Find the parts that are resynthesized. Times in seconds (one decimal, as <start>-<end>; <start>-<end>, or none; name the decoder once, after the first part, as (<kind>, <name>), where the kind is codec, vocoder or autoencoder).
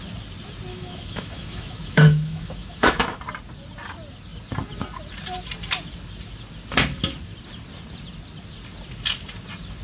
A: 0.7-3.2 (autoencoder, DAC-VAE)